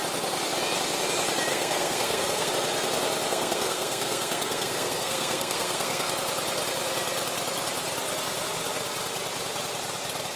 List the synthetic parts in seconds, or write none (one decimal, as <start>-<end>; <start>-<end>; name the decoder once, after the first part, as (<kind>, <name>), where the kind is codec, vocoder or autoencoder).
1.5-2.5 (codec, SNAC); 3.3-6.1